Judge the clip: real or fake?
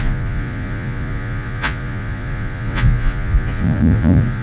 fake